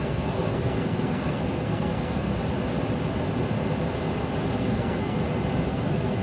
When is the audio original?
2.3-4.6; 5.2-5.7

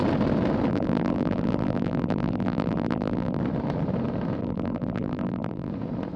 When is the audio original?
0.0-0.7; 3.4-4.4; 5.7-6.2

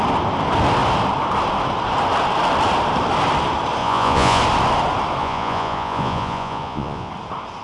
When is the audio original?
0.0-3.8; 4.4-5.2; 7.1-7.6

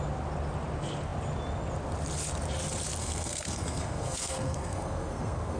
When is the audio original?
0.0-3.0

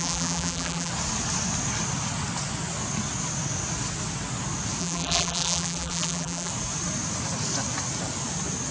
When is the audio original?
0.9-4.8; 6.5-8.7

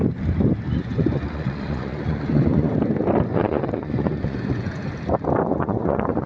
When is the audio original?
0.0-0.8; 2.7-3.3; 4.9-5.5

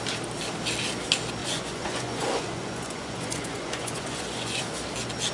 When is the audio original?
0.0-1.4; 4.6-5.3